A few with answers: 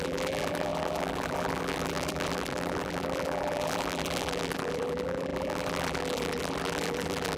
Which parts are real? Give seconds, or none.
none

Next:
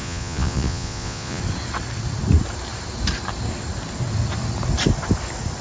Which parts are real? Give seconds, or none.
1.4-5.6

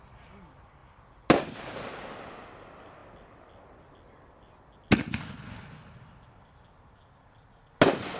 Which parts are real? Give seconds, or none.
0.0-8.2

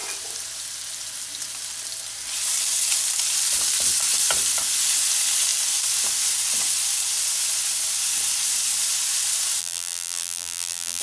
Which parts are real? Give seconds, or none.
0.0-9.6

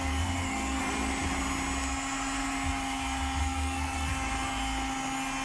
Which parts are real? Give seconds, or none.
0.8-3.4; 4.1-5.4

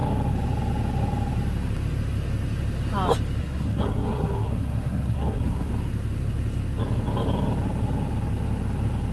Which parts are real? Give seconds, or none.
0.0-3.4; 5.7-9.1

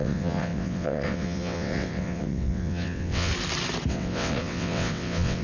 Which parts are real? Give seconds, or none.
3.3-3.9

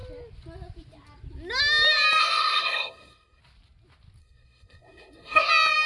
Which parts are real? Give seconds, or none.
0.0-2.2; 3.4-4.2; 5.5-5.9